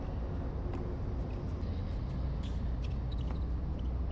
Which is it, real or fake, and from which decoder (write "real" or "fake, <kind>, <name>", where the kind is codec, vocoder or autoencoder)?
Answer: real